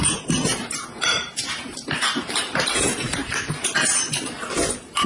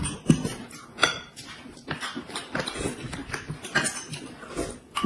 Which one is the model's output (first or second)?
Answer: first